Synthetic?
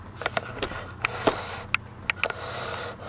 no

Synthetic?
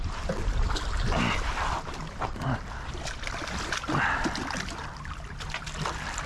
no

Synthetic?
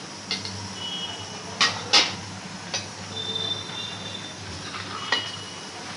no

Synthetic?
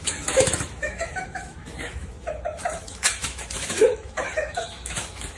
yes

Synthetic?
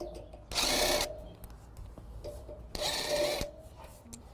no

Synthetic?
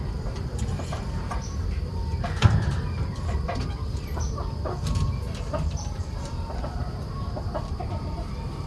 yes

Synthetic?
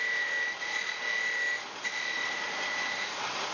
no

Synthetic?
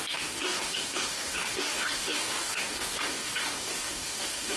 yes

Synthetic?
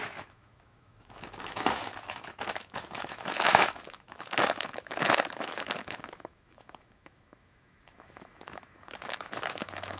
yes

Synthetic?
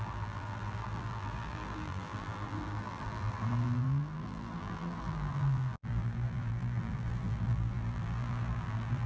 yes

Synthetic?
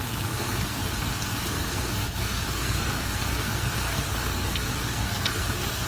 yes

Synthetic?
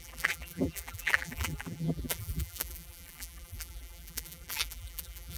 yes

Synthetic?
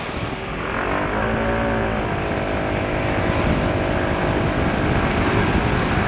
no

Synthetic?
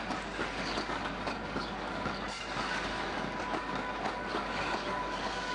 yes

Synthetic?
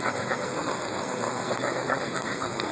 yes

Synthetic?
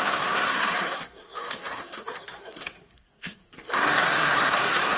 yes